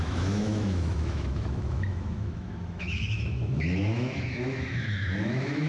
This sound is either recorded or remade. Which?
remade